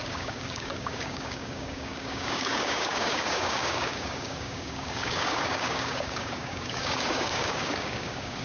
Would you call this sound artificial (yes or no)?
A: yes